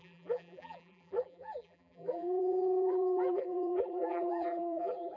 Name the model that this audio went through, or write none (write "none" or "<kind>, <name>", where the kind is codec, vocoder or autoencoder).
vocoder, BigVGAN v2